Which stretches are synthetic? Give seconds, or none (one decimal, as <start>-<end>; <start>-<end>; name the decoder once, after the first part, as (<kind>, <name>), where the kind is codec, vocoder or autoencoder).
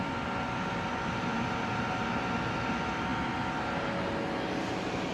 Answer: none